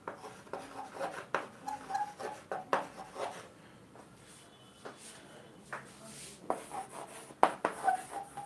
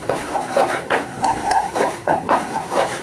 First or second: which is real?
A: first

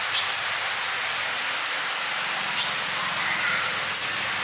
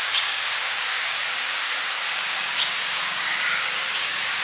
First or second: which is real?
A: first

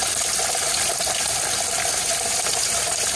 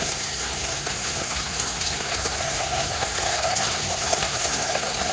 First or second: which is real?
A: first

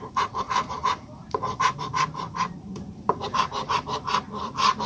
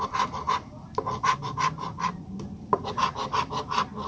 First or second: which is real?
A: second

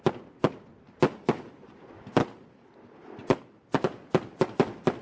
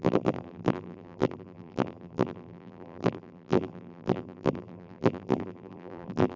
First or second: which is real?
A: first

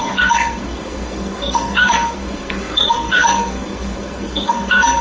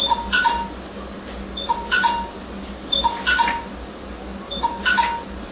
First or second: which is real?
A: second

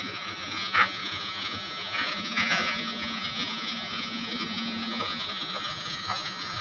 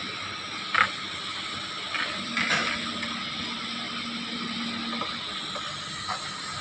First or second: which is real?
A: second